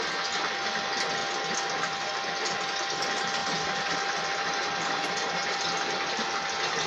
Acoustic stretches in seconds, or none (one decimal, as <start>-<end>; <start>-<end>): 0.0-3.4; 5.6-6.9